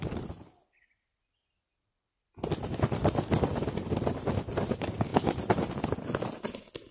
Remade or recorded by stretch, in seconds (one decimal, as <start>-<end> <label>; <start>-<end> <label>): 0.0-6.9 recorded

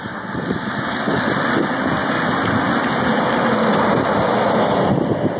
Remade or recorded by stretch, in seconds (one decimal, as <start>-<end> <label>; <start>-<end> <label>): 0.0-5.4 recorded

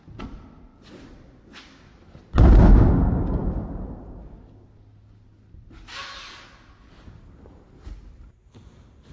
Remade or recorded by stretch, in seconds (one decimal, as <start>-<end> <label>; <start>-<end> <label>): 0.0-9.1 recorded

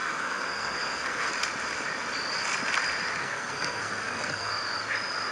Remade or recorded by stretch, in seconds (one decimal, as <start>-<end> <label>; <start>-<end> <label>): 0.0-1.3 remade; 1.3-3.2 recorded; 3.2-4.5 remade; 4.5-5.3 recorded

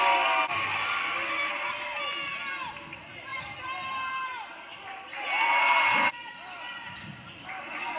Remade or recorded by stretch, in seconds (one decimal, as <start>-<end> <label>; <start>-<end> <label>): 0.0-0.8 recorded; 0.8-1.5 remade; 1.5-8.0 recorded

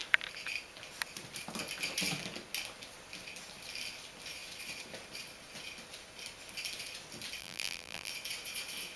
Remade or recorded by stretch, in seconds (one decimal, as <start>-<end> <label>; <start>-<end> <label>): 0.0-7.4 recorded; 7.4-8.1 remade; 8.1-9.0 recorded

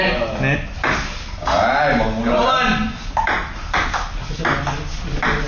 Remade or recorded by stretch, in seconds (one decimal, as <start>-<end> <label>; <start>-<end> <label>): 0.0-5.5 recorded